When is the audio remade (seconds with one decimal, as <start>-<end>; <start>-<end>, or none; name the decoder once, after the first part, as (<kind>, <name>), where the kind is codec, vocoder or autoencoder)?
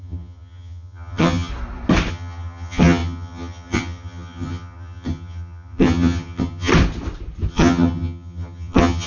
0.0-1.5 (vocoder, HiFi-GAN); 2.1-6.7; 7.5-9.1